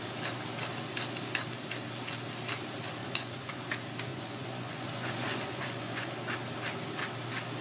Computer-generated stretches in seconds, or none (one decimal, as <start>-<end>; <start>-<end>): 3.0-3.6; 4.1-6.1